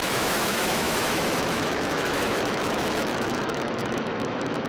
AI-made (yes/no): yes